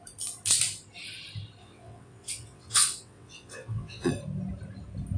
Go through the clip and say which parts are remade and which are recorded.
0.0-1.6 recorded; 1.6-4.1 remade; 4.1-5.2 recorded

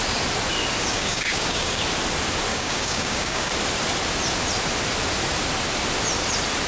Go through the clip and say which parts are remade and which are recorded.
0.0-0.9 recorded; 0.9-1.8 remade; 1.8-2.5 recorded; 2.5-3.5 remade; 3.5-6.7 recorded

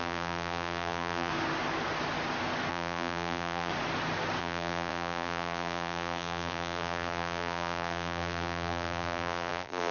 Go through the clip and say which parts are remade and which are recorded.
0.0-1.3 remade; 1.3-2.7 recorded; 2.7-3.7 remade; 3.7-4.4 recorded; 4.4-9.9 remade

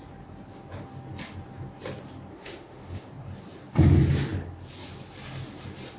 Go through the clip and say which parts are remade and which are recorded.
0.0-2.3 recorded; 2.3-3.1 remade; 3.1-6.0 recorded

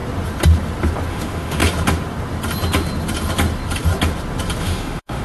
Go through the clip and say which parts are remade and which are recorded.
0.0-1.1 recorded; 1.1-1.6 remade; 1.6-4.6 recorded; 4.6-5.2 remade

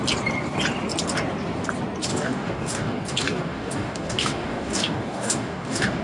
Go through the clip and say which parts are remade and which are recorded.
0.0-2.1 recorded; 2.1-6.0 remade